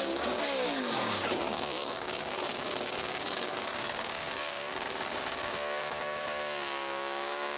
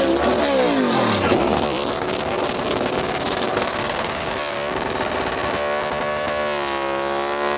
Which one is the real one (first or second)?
second